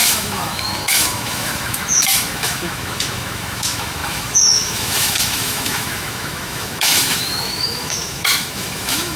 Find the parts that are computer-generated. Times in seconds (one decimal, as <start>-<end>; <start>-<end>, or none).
0.0-9.2